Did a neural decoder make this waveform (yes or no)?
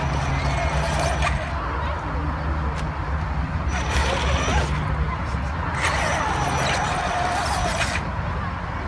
no